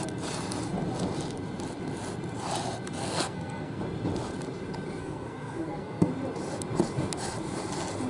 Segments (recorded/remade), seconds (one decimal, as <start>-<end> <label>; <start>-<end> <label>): 0.0-3.0 recorded; 3.0-3.8 remade; 3.8-5.0 recorded; 5.0-6.1 remade; 6.1-8.1 recorded